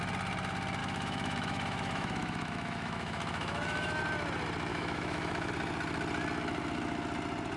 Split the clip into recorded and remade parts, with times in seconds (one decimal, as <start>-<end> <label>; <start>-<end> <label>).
0.0-0.8 recorded; 0.8-4.0 remade; 4.0-4.7 recorded; 4.7-5.5 remade; 5.5-7.6 recorded